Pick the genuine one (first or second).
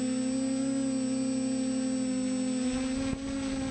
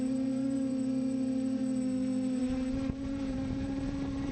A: first